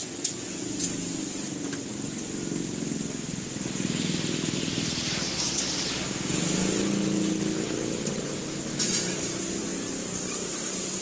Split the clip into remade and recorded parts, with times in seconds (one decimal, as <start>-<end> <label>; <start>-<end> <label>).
0.0-0.6 remade; 0.6-11.0 recorded